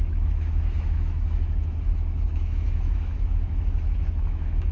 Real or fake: fake